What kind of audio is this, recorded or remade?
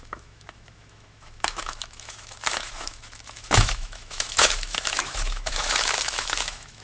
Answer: remade